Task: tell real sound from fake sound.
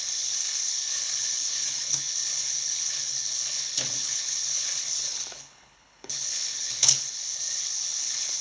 fake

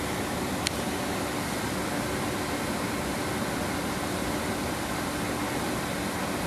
real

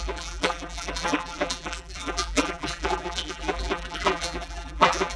fake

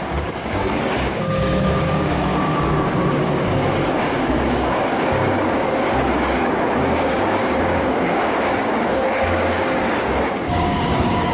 fake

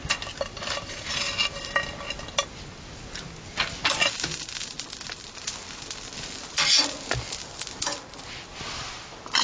real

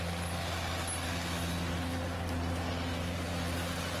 real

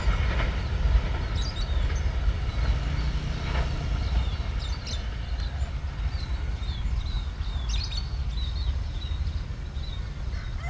real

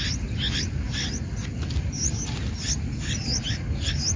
real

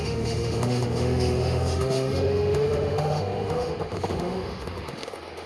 fake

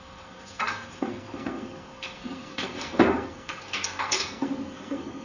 fake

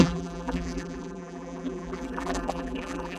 fake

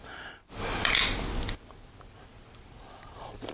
real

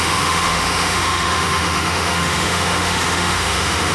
fake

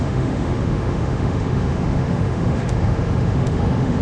fake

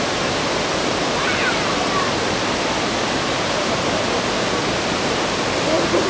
real